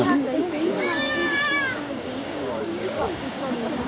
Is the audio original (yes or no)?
no